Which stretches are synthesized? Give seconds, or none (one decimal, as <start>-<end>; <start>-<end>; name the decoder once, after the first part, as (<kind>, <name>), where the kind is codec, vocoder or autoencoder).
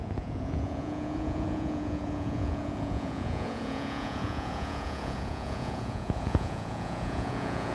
0.0-7.7 (vocoder, Vocos)